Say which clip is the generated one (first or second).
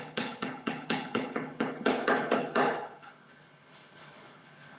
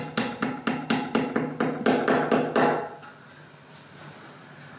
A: first